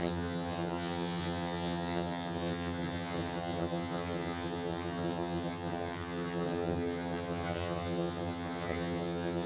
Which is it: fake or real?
fake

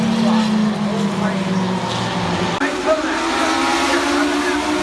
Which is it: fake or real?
real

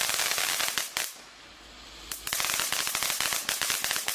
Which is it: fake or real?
real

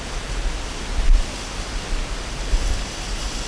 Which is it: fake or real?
real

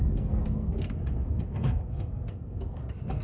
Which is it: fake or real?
fake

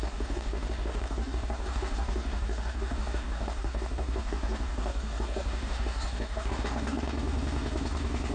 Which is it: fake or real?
fake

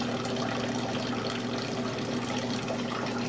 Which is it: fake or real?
real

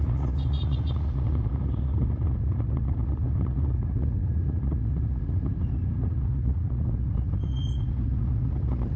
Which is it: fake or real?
fake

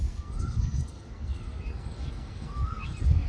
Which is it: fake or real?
fake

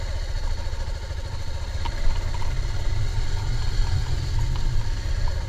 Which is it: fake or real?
real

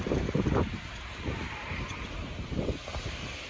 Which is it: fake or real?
fake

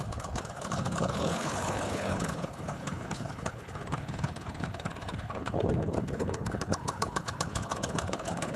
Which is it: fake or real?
fake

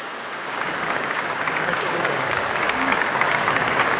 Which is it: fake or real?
fake